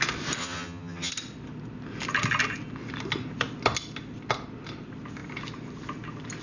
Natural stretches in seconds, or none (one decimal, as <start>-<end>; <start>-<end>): 0.0-0.4; 1.1-6.4